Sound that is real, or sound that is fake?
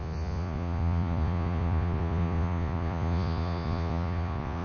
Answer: fake